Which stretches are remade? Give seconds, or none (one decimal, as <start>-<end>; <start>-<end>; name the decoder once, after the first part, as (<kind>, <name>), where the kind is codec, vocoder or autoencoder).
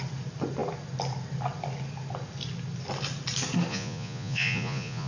3.7-5.1 (vocoder, Vocos)